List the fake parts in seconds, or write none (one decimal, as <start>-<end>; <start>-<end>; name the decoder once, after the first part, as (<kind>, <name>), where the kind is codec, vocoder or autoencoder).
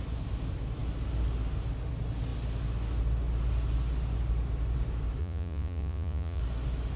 5.2-6.4 (vocoder, Vocos)